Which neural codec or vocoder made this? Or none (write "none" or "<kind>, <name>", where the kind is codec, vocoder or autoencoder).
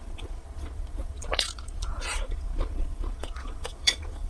vocoder, Vocos